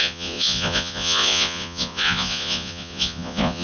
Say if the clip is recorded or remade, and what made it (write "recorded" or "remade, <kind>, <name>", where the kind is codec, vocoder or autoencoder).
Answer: remade, vocoder, Vocos